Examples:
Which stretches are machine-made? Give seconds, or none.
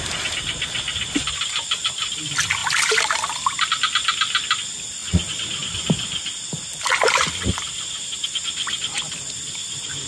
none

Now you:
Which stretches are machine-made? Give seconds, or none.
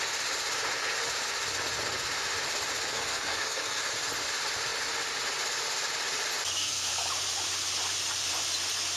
2.9-3.8 (codec, SNAC); 6.6-7.1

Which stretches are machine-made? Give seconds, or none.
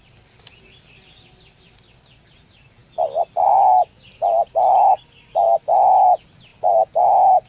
none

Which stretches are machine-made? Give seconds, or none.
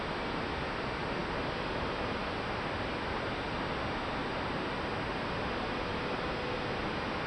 none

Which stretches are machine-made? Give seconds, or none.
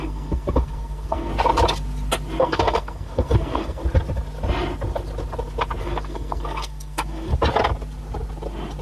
0.0-1.3 (codec, SNAC); 2.4-3.8; 5.8-7.3